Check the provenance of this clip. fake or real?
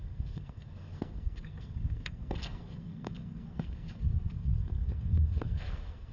fake